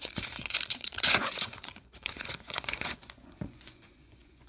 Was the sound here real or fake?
fake